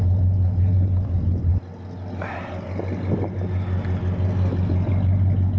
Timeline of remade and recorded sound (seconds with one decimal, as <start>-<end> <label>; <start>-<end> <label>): 0.0-5.6 recorded